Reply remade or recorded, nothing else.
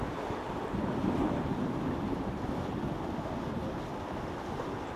recorded